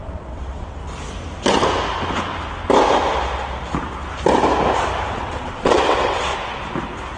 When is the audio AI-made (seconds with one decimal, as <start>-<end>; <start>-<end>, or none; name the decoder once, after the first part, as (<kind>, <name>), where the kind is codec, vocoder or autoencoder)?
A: 0.0-0.8 (vocoder, WaveNeXt); 5.1-6.3